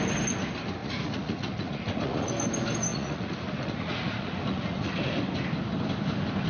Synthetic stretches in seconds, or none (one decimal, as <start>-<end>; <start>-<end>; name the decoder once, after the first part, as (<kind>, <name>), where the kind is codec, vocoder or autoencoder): 0.8-2.3 (vocoder, Vocos); 2.9-4.9